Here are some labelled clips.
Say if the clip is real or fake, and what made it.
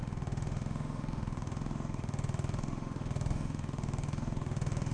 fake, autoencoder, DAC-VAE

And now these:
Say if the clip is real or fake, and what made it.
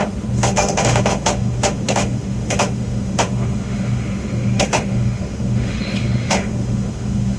fake, autoencoder, DAC-VAE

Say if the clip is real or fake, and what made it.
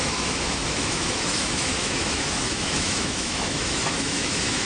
fake, autoencoder, DAC-VAE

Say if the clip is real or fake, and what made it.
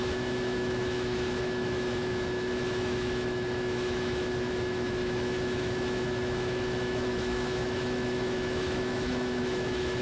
fake, autoencoder, DAC-VAE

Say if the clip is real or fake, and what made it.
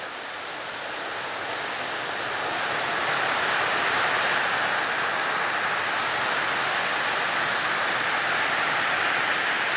real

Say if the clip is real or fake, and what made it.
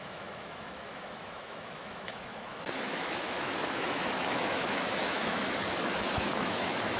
fake, autoencoder, DAC-VAE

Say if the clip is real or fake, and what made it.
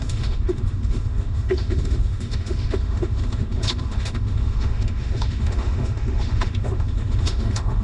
fake, autoencoder, DAC-VAE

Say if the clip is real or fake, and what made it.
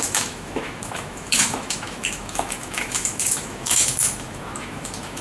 fake, autoencoder, DAC-VAE